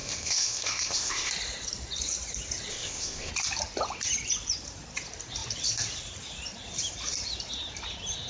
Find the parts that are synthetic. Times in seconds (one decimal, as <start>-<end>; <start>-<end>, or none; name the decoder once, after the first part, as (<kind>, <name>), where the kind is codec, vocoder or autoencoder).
0.0-1.3 (codec, ZipCodec); 2.7-3.3